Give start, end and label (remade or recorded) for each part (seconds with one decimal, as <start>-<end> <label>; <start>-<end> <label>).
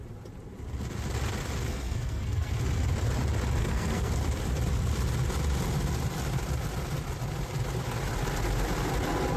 0.0-1.7 recorded; 1.7-2.5 remade; 2.5-3.6 recorded; 3.6-4.1 remade; 4.1-9.4 recorded